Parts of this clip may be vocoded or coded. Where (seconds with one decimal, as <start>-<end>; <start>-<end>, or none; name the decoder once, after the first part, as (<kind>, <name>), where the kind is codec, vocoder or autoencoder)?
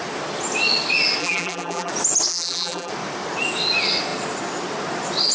1.2-1.9 (vocoder, BigVGAN v2); 2.3-2.9